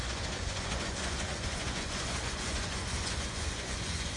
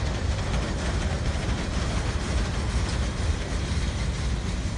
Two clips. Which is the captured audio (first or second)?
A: second